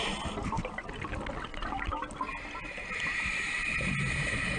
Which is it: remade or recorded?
recorded